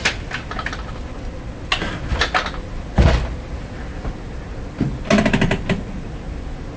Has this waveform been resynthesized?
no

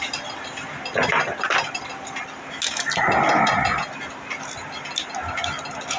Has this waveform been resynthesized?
no